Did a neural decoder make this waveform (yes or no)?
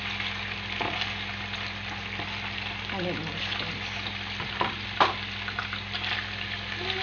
no